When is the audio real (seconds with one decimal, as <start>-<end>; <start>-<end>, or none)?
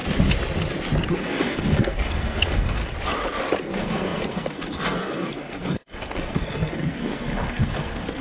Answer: 0.0-1.1; 2.8-3.6